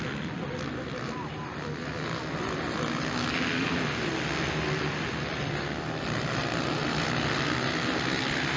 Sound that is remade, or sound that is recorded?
recorded